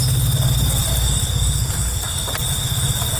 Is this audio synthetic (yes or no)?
no